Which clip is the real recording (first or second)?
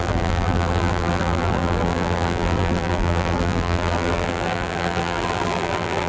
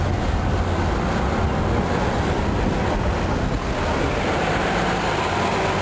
second